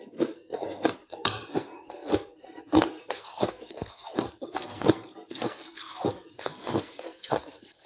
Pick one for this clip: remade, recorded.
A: remade